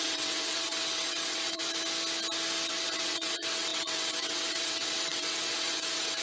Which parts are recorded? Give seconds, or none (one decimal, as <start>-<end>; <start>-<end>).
1.6-2.7